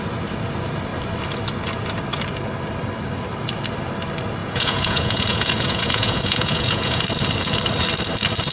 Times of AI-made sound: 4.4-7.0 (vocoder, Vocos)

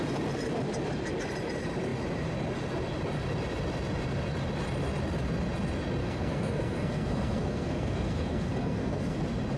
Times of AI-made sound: 6.0-9.2 (codec, SNAC)

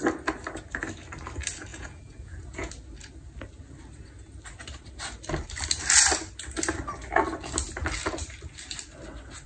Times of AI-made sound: 1.7-2.7 (vocoder, Vocos)

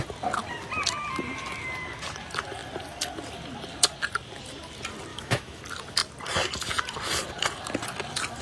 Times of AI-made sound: 5.1-5.6 (autoencoder, DAC-VAE)

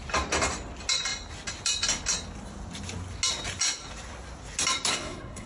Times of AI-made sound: 4.9-5.5 (codec, SNAC)